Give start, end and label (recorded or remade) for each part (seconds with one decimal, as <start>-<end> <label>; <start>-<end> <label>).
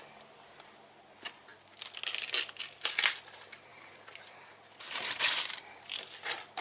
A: 0.0-3.7 recorded; 3.7-5.6 remade; 5.6-6.6 recorded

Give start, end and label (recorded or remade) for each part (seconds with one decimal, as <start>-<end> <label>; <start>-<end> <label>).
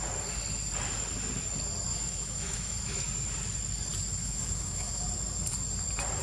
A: 0.0-1.9 recorded; 1.9-3.0 remade; 3.0-4.2 recorded; 4.2-5.0 remade; 5.0-6.2 recorded